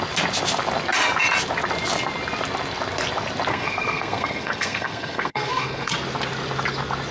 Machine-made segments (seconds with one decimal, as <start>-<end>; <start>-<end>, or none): 3.5-5.9